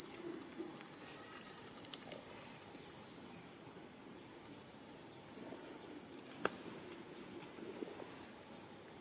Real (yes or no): yes